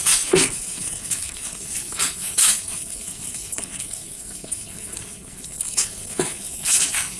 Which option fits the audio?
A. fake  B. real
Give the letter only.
A